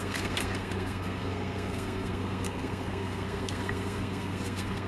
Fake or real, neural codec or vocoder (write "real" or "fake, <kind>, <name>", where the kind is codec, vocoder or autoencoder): fake, codec, SNAC